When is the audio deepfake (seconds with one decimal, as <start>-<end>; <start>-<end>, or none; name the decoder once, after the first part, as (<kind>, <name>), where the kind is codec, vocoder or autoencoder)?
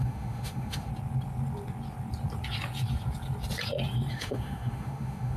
0.0-0.9 (autoencoder, DAC-VAE); 4.1-5.4